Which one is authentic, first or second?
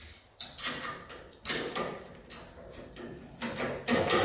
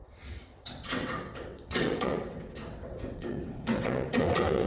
first